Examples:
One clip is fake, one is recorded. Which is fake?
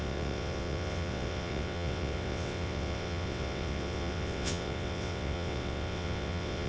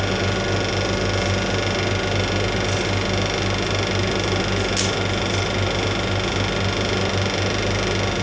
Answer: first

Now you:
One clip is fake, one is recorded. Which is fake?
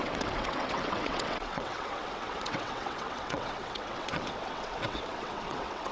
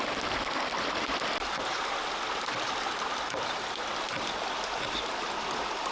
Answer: first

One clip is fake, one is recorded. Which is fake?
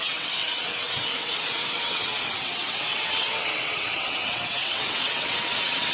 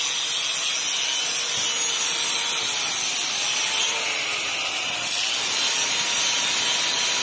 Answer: first